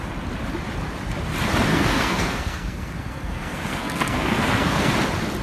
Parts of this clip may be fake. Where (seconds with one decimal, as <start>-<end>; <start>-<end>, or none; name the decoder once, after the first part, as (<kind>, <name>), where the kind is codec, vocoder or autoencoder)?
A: 1.7-4.9 (codec, SNAC)